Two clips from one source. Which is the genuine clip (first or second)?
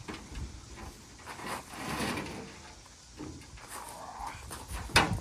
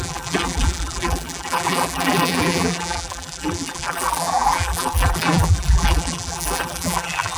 first